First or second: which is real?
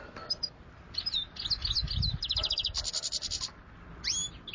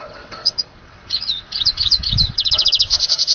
first